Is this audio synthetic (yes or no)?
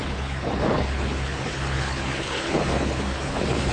yes